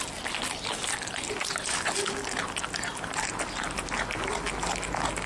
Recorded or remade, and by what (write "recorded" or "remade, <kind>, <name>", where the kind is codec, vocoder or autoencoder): recorded